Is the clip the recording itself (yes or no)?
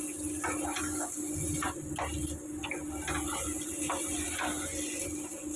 yes